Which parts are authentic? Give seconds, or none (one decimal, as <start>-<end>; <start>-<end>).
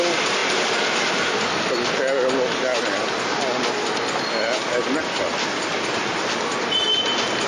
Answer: 0.0-7.5